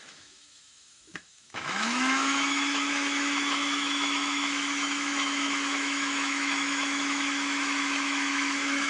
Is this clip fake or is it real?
fake